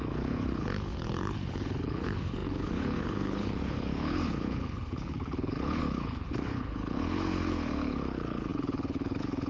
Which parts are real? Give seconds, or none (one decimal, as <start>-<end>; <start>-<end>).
none